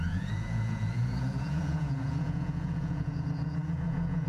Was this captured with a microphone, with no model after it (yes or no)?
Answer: no